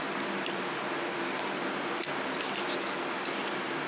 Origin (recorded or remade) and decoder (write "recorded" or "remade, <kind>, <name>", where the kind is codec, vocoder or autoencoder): recorded